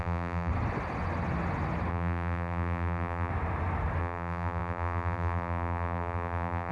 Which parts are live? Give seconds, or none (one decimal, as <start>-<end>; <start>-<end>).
0.5-1.9; 3.3-4.0